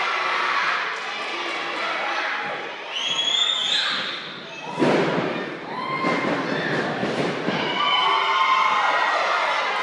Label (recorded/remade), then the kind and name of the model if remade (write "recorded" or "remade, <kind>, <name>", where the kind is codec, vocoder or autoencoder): recorded